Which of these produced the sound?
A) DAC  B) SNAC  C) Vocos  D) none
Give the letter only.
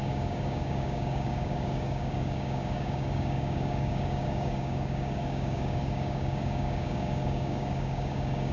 A